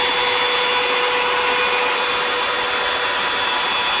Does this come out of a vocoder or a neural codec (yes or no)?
no